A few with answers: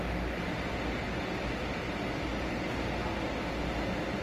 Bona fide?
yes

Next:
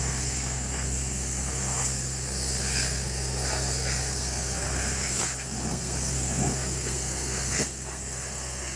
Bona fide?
no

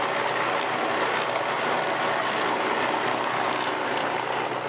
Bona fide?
yes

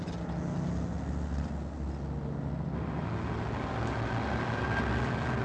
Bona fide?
yes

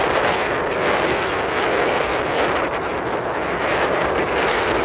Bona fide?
yes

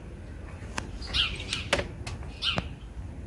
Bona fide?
yes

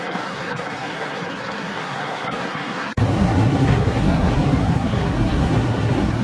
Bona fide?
no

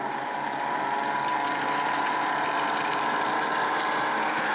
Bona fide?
yes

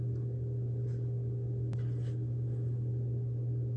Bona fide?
yes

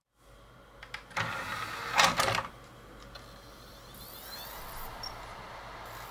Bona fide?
yes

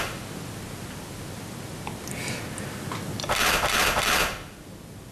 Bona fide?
yes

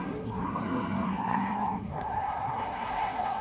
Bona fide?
no